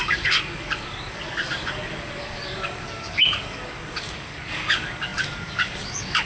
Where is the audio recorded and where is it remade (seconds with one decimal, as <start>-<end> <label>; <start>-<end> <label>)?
0.0-6.3 remade